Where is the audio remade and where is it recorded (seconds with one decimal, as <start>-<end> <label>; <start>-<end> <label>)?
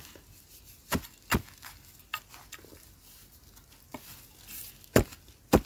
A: 0.0-5.7 recorded